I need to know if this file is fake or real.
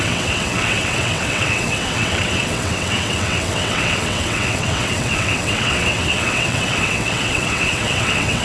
fake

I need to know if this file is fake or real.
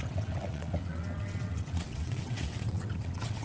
fake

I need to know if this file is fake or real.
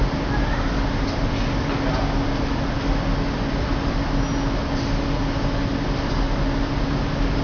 real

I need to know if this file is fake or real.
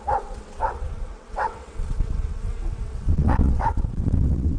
fake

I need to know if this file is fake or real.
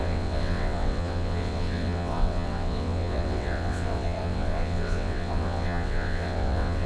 fake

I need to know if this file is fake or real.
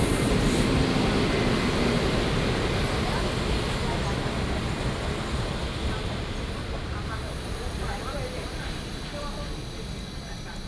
real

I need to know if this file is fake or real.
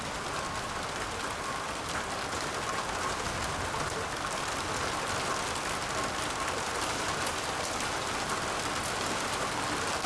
real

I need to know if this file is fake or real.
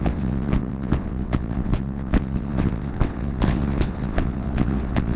fake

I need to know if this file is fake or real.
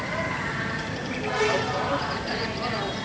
real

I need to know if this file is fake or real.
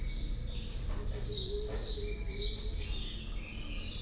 real